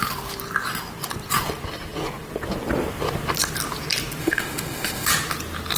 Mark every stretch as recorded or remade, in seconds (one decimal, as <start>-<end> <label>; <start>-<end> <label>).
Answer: 0.0-4.2 recorded; 4.2-5.1 remade; 5.1-5.8 recorded